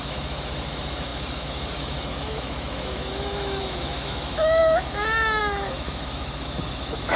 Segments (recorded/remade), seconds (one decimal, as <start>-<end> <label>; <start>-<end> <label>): 0.0-7.2 remade